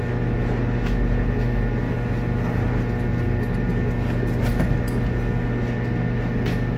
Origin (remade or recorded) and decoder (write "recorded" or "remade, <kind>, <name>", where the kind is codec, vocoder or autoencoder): recorded